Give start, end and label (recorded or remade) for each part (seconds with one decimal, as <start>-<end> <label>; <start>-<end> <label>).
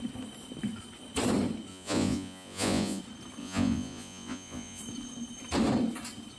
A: 0.0-1.7 recorded; 1.7-3.0 remade; 3.0-3.4 recorded; 3.4-4.8 remade; 4.8-6.4 recorded